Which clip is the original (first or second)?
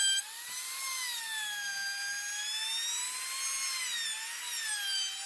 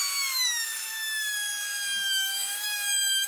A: first